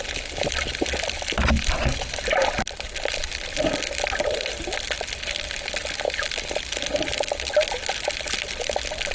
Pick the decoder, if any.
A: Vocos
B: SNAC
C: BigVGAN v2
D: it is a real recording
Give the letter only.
D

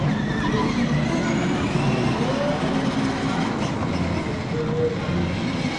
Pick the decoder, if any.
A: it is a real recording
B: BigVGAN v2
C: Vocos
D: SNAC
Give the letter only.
A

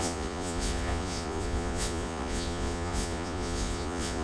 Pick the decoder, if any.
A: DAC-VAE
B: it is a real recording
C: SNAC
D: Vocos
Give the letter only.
D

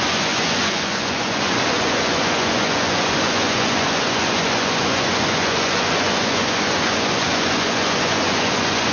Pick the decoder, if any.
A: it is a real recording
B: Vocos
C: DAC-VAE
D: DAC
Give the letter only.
B